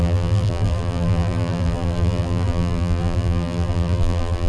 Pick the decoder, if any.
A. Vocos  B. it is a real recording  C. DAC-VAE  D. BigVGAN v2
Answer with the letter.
D